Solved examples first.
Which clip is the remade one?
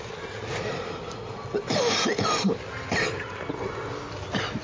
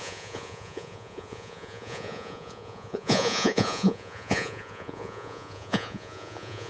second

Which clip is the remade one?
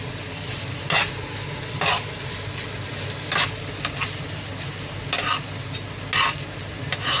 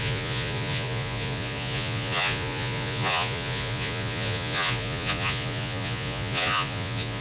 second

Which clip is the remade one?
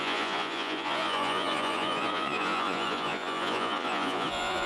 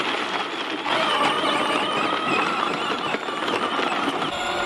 first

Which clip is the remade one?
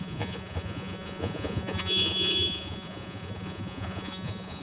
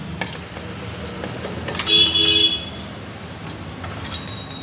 first